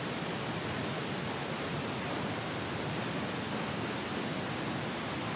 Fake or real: real